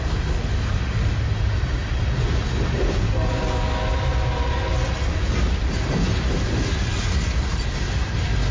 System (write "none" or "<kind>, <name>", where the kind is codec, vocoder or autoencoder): none